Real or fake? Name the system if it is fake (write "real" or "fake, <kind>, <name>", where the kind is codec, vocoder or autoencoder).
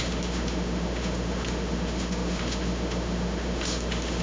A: fake, autoencoder, DAC-VAE